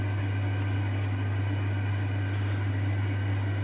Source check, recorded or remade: recorded